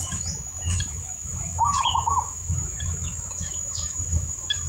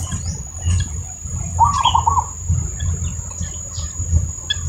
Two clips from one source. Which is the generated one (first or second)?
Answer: first